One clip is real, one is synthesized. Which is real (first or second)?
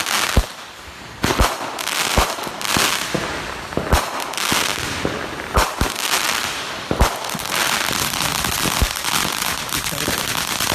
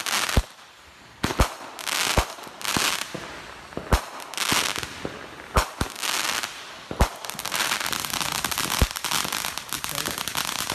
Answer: second